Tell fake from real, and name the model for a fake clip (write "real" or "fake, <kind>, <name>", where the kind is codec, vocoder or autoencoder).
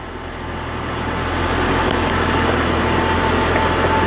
real